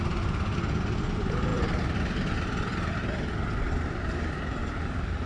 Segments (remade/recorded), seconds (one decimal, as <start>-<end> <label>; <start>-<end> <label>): 0.0-1.5 recorded; 1.5-3.0 remade; 3.0-4.6 recorded; 4.6-5.3 remade